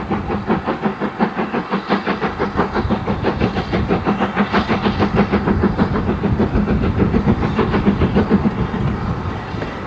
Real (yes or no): yes